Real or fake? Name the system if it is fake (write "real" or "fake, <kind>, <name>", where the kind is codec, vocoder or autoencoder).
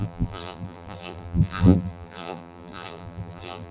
fake, vocoder, BigVGAN v2